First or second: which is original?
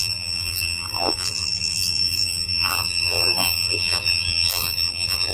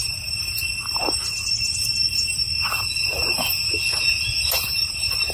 second